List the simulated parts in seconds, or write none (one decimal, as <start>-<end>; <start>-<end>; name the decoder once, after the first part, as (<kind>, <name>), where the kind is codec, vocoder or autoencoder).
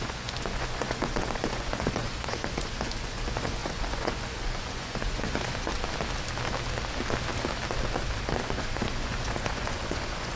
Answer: 0.0-5.7 (vocoder, Vocos); 8.4-10.4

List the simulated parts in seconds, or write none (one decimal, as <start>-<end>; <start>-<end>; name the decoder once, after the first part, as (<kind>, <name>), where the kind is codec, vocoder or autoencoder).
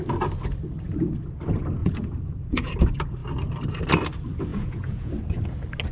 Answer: 1.8-2.8 (vocoder, Vocos); 4.5-5.1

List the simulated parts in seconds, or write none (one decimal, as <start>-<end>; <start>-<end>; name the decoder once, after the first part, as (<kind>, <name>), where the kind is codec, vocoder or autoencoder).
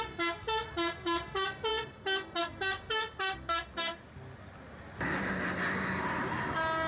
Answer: none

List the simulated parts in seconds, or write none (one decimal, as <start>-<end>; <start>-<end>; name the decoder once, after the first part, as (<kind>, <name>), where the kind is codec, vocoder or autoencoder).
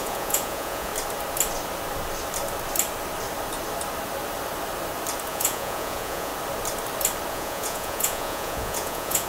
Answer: 0.0-0.9 (vocoder, Vocos); 5.3-6.3; 7.3-9.3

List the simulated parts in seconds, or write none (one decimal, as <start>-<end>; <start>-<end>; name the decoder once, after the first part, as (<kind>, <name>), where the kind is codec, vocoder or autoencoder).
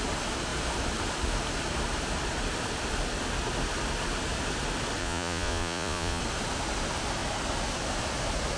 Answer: 5.0-6.2 (vocoder, Vocos)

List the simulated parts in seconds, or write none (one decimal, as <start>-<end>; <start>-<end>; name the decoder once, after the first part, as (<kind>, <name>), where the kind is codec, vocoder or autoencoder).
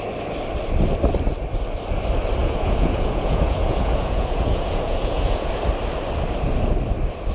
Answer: 2.4-5.5 (vocoder, Vocos)